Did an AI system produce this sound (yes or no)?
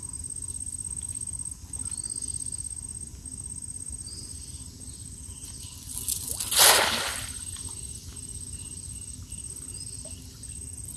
no